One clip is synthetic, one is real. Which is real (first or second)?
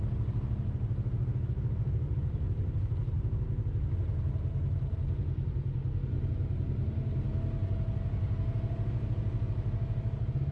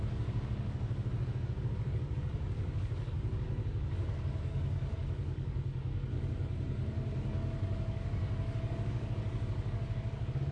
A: first